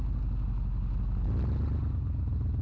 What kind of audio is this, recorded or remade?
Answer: recorded